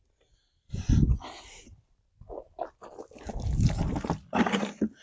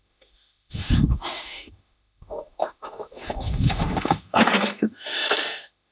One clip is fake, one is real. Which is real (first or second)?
first